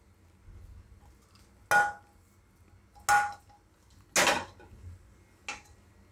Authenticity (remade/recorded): recorded